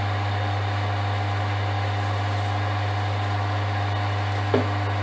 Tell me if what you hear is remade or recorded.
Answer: recorded